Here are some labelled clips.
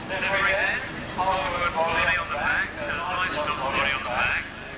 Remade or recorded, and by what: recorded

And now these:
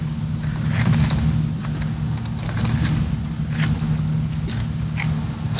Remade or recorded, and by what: recorded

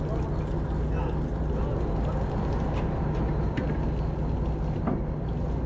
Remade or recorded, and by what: recorded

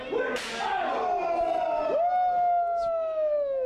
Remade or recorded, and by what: recorded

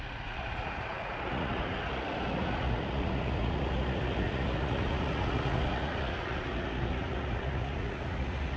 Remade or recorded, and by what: remade, vocoder, Vocos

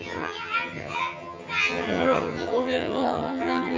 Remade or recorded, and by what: remade, vocoder, HiFi-GAN